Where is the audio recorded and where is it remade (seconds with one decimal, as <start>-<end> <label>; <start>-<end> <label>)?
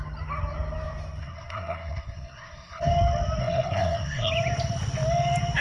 0.0-1.2 recorded; 1.2-2.8 remade; 2.8-3.4 recorded; 3.4-4.3 remade; 4.3-5.6 recorded